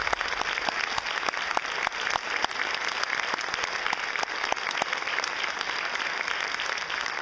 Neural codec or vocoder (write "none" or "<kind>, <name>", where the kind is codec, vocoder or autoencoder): none